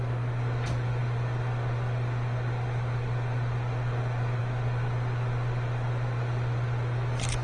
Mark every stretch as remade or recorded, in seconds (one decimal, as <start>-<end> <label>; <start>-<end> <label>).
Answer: 0.0-7.4 recorded